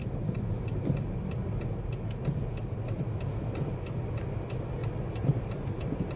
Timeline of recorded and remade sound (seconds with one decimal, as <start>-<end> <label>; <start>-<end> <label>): 0.0-0.9 remade; 0.9-4.8 recorded; 4.8-6.2 remade